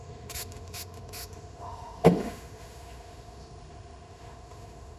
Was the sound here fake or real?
fake